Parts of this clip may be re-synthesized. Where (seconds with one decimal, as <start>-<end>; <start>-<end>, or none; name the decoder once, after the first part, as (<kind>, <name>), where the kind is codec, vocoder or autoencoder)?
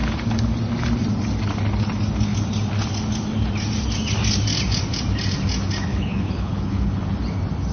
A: 5.9-7.0 (codec, HILCodec)